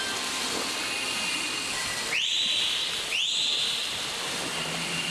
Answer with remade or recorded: recorded